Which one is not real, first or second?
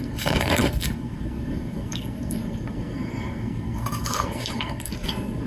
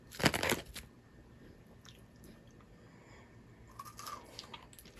first